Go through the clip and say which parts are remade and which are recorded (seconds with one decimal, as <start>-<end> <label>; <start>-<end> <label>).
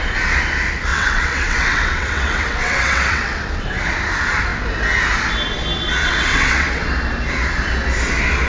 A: 0.0-0.9 recorded; 0.9-3.7 remade; 3.7-6.0 recorded; 6.0-6.9 remade; 6.9-8.5 recorded